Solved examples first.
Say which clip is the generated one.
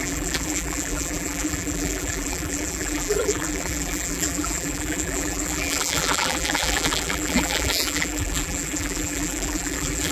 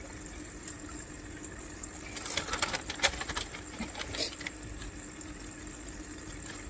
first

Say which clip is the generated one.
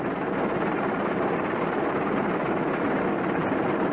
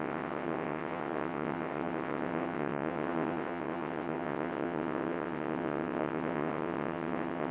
second